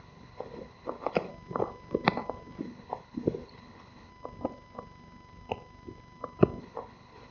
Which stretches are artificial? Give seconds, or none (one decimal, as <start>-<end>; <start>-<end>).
0.0-1.3; 2.6-4.1; 6.6-7.3